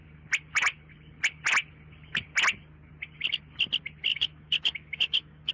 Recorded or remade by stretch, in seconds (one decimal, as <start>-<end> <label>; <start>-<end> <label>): 0.0-4.1 recorded; 4.1-5.5 remade